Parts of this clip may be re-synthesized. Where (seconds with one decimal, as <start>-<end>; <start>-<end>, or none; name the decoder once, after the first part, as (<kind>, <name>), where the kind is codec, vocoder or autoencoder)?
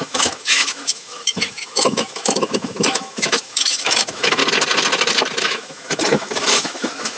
0.0-4.4 (autoencoder, DAC-VAE); 5.4-7.2